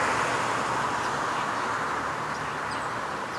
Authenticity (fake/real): real